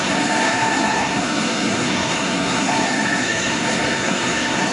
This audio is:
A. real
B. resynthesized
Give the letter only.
B